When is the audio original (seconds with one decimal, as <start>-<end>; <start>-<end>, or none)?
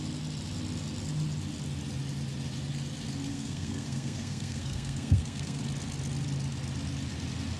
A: 0.0-3.3; 5.6-7.6